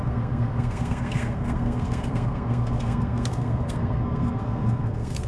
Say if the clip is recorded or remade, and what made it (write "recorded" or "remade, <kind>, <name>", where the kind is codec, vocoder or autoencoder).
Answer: remade, codec, SNAC